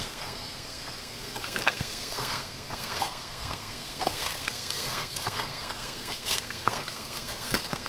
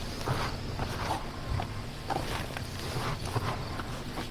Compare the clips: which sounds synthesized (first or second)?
first